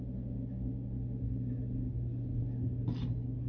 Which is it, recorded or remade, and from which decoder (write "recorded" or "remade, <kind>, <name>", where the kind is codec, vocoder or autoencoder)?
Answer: recorded